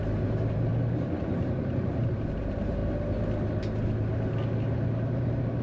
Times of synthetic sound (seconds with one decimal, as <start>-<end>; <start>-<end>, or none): 0.0-2.8; 4.6-5.6